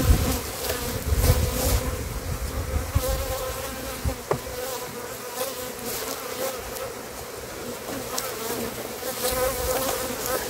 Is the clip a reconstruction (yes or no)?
no